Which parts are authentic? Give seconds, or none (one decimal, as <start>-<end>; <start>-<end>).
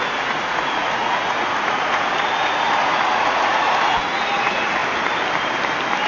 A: 4.8-6.1